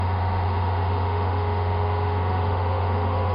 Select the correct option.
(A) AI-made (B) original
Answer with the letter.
A